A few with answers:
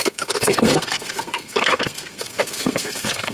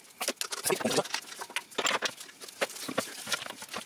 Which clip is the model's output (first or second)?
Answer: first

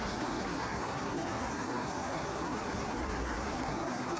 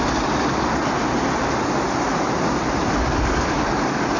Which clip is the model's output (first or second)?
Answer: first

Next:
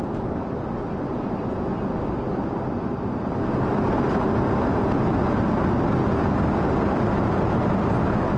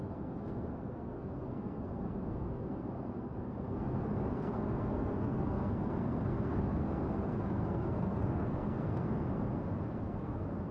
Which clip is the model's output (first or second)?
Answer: second